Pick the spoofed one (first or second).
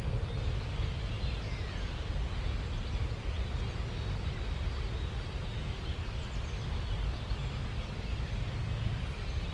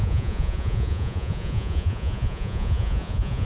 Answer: second